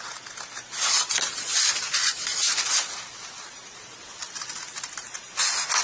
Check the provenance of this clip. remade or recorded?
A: recorded